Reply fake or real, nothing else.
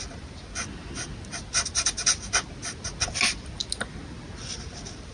real